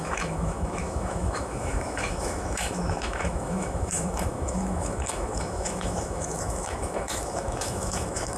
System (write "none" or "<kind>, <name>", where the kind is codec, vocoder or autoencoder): autoencoder, DAC-VAE